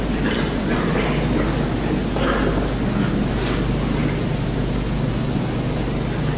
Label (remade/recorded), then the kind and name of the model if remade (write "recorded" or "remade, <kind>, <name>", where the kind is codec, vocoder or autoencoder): recorded